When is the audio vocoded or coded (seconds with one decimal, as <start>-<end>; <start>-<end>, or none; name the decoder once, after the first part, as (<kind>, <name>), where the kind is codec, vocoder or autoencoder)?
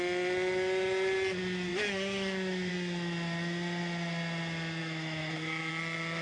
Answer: 1.7-2.7 (autoencoder, DAC-VAE); 4.8-5.7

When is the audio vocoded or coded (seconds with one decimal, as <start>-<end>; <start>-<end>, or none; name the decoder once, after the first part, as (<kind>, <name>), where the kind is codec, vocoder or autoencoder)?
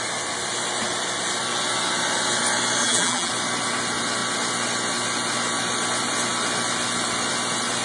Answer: 2.8-3.3 (vocoder, BigVGAN v2)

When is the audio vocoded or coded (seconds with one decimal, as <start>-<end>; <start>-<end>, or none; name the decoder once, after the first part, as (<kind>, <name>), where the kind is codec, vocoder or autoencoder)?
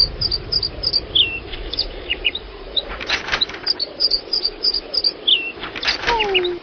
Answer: 1.5-3.0 (vocoder, Vocos); 4.0-4.9